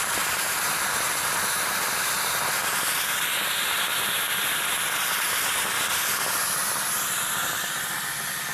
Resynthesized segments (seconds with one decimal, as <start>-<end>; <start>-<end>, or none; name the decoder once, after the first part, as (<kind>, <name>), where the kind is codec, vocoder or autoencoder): none